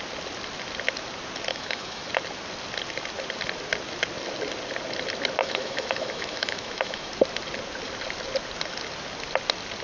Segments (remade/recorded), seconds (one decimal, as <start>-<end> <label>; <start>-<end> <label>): 0.0-1.5 recorded; 1.5-2.1 remade; 2.1-5.4 recorded; 5.4-7.1 remade; 7.1-9.8 recorded